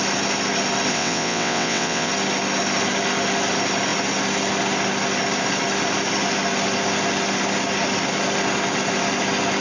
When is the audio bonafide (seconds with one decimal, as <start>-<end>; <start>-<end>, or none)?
0.0-0.9; 2.1-9.6